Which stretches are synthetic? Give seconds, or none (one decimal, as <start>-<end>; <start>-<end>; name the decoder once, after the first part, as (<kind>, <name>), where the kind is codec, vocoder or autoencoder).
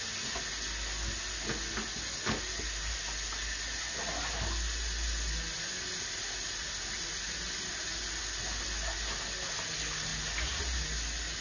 none